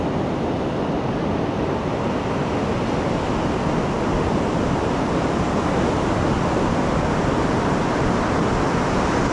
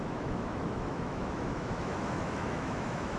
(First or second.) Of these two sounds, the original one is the first